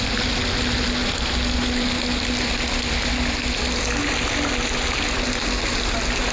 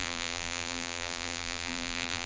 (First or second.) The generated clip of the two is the second